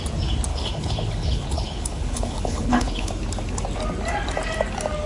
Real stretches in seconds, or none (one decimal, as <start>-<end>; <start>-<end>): 0.0-0.5; 3.1-5.1